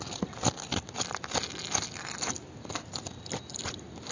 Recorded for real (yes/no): yes